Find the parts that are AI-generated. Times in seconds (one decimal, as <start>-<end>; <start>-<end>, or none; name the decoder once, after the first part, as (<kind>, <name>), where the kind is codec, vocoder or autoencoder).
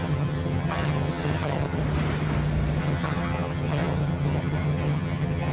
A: 0.0-1.8 (vocoder, HiFi-GAN); 2.8-5.5